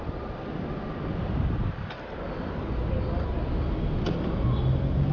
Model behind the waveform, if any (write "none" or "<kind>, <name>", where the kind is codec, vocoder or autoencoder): none